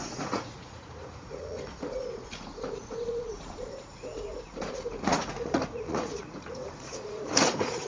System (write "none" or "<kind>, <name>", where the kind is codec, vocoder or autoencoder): vocoder, Vocos